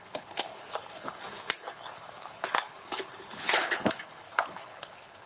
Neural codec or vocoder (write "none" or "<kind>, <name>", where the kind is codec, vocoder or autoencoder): codec, HILCodec